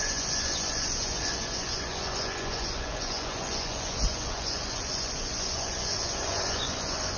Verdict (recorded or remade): remade